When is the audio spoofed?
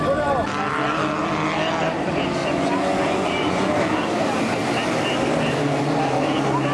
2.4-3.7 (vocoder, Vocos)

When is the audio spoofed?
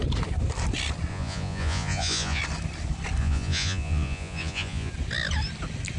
1.1-2.4 (vocoder, Vocos); 3.2-4.9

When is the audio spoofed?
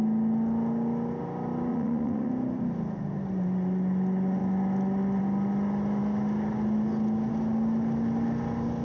1.7-2.3 (vocoder, Vocos)